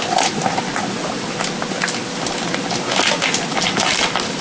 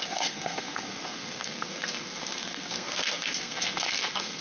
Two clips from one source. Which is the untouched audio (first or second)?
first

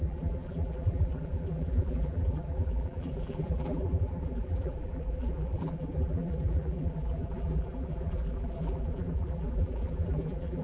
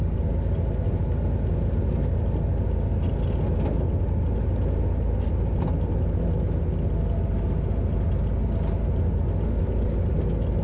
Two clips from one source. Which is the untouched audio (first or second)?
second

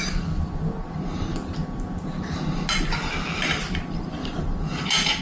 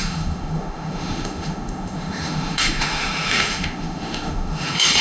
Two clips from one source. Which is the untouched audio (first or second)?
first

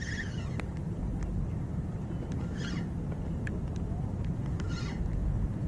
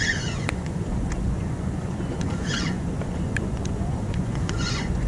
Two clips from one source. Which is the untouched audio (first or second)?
first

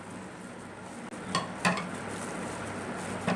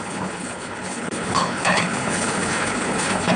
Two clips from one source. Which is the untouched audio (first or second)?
first